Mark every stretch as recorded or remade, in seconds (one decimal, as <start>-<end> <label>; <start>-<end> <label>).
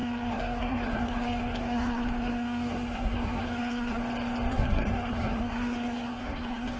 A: 0.0-4.0 remade; 4.0-4.5 recorded; 4.5-6.8 remade